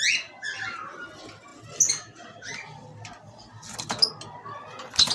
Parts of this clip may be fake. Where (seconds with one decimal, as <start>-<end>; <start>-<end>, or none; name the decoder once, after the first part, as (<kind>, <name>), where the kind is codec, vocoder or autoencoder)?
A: none